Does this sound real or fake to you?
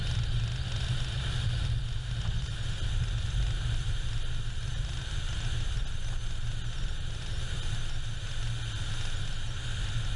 real